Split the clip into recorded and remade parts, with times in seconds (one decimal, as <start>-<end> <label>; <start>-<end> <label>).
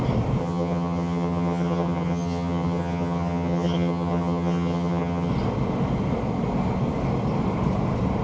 0.0-0.4 recorded; 0.4-5.3 remade; 5.3-8.2 recorded